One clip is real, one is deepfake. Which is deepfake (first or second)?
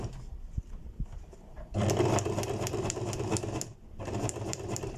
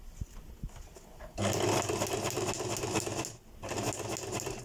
first